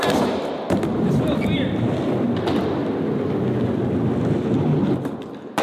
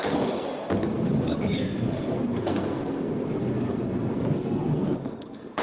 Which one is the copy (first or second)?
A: second